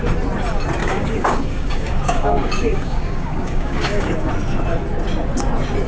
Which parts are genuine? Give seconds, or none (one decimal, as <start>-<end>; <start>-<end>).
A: 0.0-0.8; 4.3-5.9

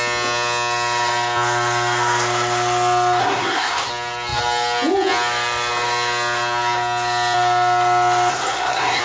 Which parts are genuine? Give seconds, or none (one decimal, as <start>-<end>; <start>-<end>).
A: 0.0-3.2; 3.9-8.3

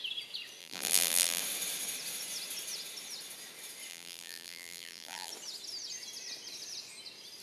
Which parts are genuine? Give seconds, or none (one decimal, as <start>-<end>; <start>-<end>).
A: 0.0-0.6; 1.4-3.9; 5.3-7.4